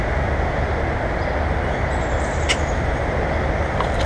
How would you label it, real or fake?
real